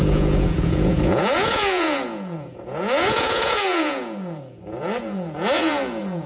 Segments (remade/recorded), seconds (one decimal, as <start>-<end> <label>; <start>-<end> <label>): 0.0-6.3 remade